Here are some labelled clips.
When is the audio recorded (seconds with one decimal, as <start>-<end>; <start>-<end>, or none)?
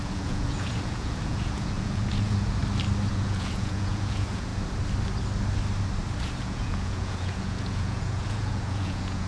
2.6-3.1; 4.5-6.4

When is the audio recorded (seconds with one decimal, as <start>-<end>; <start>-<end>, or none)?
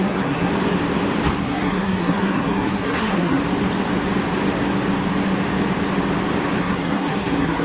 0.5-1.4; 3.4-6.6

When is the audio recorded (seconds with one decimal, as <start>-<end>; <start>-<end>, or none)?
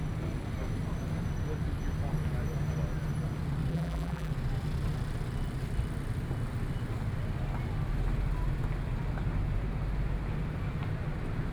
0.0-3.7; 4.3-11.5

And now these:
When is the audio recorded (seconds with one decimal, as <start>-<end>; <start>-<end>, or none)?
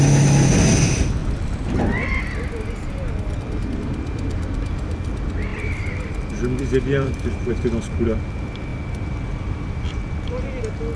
0.0-1.2; 2.2-5.5; 7.5-8.7; 10.6-11.0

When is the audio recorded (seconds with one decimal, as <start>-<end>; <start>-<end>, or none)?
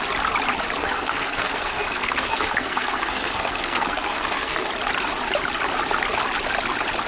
0.0-0.8; 4.7-7.1